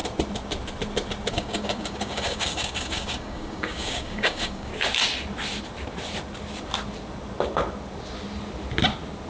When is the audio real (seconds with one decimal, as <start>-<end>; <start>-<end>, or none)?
0.0-1.3; 4.7-9.3